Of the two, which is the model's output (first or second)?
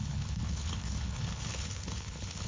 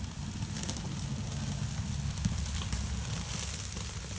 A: first